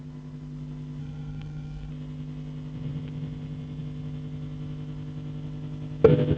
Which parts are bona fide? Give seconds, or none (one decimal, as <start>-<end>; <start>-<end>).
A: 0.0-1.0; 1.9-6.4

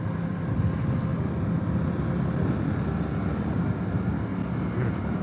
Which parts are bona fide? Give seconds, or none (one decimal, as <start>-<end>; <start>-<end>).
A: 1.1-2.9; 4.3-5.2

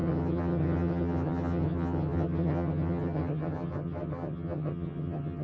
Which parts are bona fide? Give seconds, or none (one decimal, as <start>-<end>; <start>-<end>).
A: none

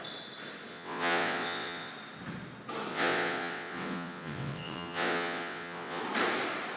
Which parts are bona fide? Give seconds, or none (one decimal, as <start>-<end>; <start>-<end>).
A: 0.0-0.7; 1.9-2.9; 6.0-6.8

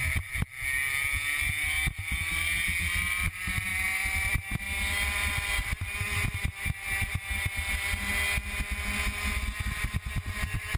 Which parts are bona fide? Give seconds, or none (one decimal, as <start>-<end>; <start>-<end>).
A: 0.0-3.7; 4.6-10.8